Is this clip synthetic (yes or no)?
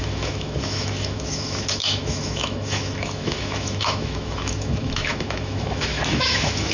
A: yes